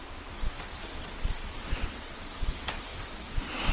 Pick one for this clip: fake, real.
fake